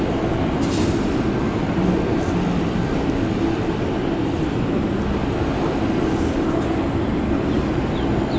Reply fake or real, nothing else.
real